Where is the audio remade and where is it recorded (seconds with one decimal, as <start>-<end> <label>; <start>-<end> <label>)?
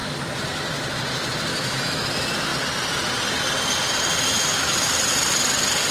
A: 0.0-1.5 recorded; 1.5-2.1 remade; 2.1-4.3 recorded; 4.3-4.9 remade; 4.9-5.9 recorded